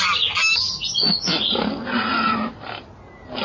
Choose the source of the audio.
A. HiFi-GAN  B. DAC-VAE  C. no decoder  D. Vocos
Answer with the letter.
C